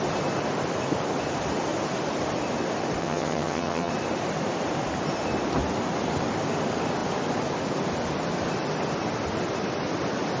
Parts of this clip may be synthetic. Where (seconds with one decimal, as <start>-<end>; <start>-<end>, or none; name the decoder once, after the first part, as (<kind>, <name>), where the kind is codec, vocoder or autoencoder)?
3.0-3.9 (vocoder, HiFi-GAN)